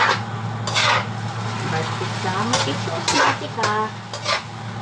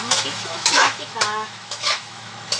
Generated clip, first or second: second